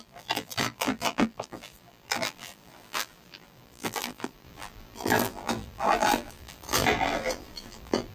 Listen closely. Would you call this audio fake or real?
fake